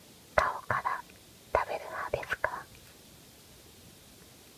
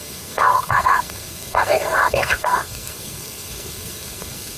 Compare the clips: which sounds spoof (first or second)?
second